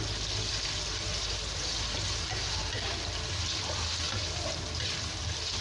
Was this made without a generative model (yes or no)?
yes